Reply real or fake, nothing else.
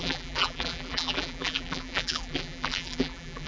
fake